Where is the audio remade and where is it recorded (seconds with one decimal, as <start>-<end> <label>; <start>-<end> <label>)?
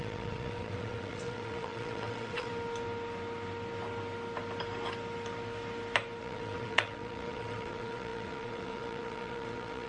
0.0-2.5 remade; 2.5-6.2 recorded; 6.2-9.9 remade